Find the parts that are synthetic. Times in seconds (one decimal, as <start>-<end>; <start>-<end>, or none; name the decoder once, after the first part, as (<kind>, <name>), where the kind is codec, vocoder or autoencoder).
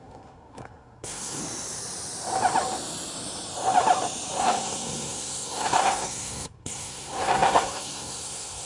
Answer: 0.0-1.4 (codec, SNAC); 4.4-8.7